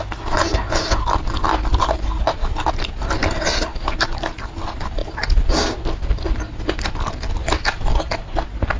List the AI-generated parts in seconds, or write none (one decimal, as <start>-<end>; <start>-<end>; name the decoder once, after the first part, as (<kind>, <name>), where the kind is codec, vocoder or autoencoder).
none